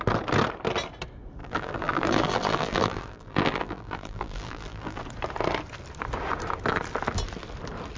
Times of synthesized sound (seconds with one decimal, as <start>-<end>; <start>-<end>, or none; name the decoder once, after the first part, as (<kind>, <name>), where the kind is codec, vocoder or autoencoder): 1.4-5.0 (vocoder, BigVGAN v2)